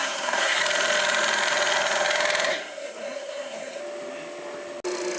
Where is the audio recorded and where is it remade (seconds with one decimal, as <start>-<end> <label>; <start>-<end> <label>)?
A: 0.0-0.6 remade; 0.6-2.5 recorded; 2.5-3.8 remade; 3.8-5.2 recorded